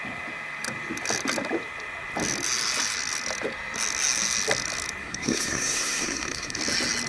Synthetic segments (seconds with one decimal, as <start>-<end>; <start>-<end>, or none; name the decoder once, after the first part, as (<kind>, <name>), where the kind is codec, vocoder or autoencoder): 5.0-6.6 (codec, SNAC)